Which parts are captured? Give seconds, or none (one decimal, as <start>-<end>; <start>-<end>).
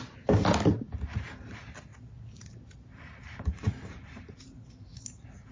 0.0-1.9